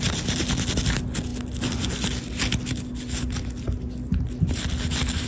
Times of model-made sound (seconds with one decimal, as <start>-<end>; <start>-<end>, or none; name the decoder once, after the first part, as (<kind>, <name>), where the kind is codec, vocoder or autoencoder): none